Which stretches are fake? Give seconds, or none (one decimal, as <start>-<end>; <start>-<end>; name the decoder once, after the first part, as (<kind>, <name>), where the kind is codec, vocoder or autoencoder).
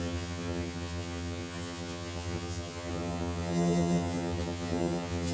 0.0-5.3 (vocoder, HiFi-GAN)